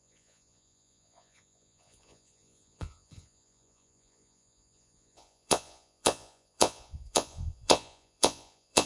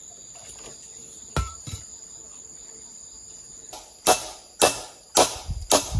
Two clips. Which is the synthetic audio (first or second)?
first